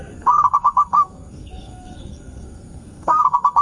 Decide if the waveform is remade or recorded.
remade